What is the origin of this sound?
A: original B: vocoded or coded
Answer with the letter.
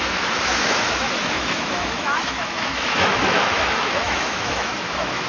B